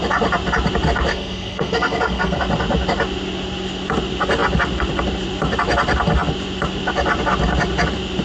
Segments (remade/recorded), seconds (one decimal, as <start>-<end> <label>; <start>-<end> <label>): 0.0-1.1 recorded; 1.1-2.4 remade; 2.4-8.2 recorded